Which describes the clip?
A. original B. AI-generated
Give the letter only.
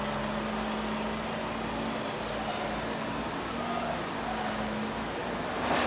A